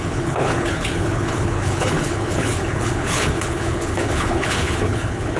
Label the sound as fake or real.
fake